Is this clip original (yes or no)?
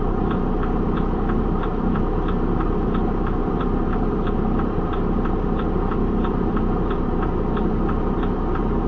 no